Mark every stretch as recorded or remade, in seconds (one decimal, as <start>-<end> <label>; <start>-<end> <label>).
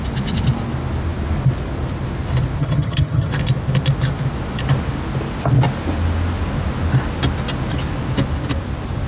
0.0-2.6 recorded; 2.6-3.3 remade; 3.3-9.1 recorded